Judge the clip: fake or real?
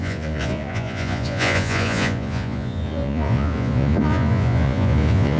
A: fake